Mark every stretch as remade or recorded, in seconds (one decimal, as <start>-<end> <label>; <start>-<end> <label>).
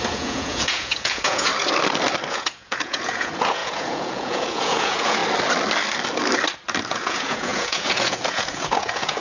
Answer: 0.0-1.5 remade; 1.5-2.3 recorded; 2.3-5.2 remade; 5.2-6.9 recorded; 6.9-9.2 remade